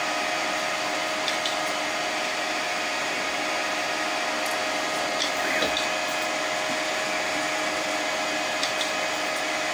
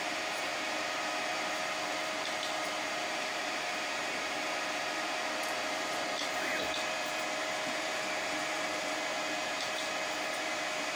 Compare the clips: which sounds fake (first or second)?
second